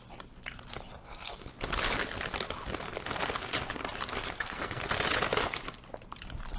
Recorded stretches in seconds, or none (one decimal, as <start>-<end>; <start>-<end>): 0.0-1.0; 1.5-4.1; 4.9-6.6